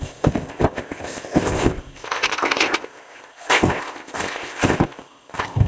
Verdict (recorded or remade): remade